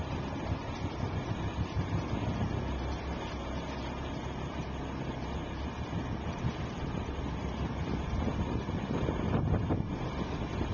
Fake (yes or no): no